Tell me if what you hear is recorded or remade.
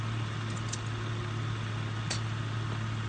recorded